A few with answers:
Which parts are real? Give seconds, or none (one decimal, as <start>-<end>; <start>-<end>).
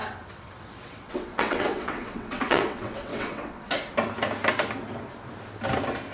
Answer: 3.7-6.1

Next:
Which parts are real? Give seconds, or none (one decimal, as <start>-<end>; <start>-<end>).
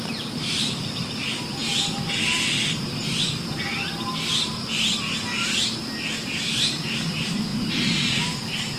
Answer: 1.6-6.4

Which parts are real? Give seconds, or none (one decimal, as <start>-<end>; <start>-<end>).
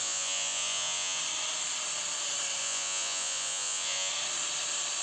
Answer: 1.2-2.6; 4.1-5.0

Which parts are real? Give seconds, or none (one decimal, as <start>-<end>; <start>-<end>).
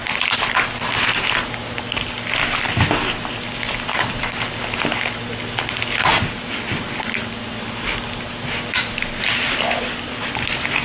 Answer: 4.6-6.1; 7.3-10.8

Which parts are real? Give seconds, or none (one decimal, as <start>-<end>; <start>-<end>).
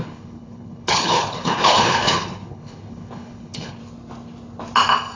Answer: 3.8-5.2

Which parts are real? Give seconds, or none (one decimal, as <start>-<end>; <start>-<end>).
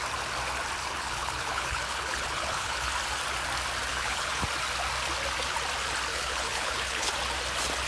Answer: 0.0-0.8; 2.9-3.9; 4.4-6.1; 7.1-7.9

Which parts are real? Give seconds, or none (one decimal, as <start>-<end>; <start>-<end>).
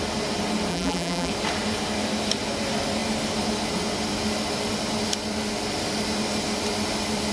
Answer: 0.0-0.7; 1.3-7.3